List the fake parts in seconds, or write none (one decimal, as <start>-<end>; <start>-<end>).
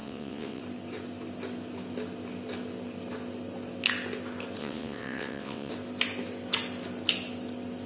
0.0-0.6; 4.6-5.7